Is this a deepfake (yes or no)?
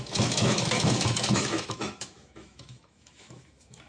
yes